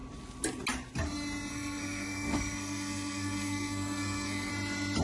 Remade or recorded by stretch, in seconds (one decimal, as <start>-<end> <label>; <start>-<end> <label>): 0.0-1.5 recorded; 1.5-4.5 remade; 4.5-5.0 recorded